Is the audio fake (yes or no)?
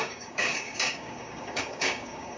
yes